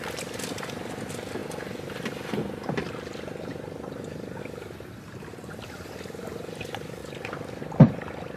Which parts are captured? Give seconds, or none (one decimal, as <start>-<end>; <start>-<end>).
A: 0.0-8.4